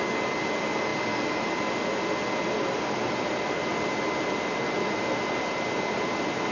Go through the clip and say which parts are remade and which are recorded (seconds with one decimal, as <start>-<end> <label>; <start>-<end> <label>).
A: 0.0-6.5 recorded